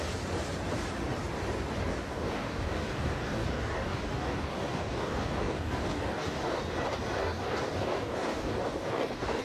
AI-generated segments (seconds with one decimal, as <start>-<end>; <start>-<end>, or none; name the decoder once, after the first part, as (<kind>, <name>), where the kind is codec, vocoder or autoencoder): 1.9-6.6 (codec, DAC); 7.2-9.4